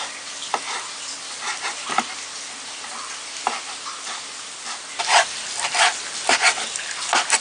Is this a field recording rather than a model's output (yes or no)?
yes